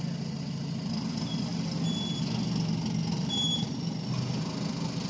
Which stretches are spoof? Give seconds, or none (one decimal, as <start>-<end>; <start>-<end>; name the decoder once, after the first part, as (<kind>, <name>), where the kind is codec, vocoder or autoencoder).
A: 3.1-3.7 (vocoder, BigVGAN v2)